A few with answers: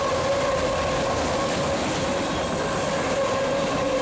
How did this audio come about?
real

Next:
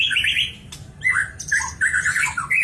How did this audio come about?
fake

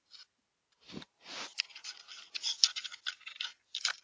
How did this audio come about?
real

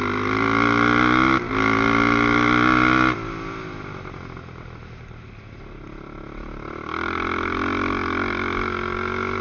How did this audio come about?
real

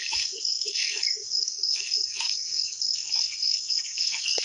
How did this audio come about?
fake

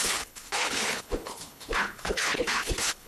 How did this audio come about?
fake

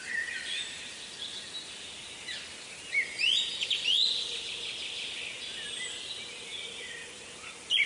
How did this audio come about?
real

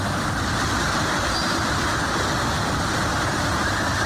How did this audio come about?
real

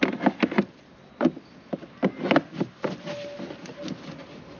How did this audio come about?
real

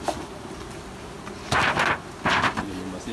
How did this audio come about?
real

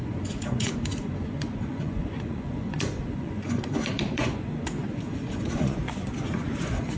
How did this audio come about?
fake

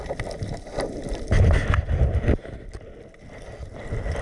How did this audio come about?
real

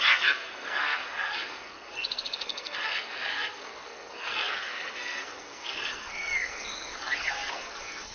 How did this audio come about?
fake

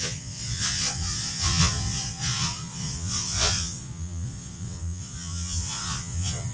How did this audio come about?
fake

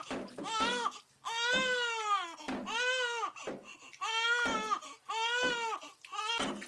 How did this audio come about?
real